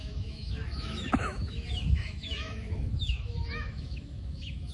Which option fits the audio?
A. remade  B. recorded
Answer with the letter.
A